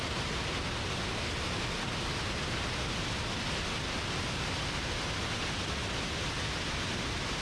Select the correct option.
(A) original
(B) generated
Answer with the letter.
A